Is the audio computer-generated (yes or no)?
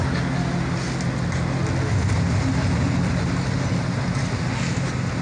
no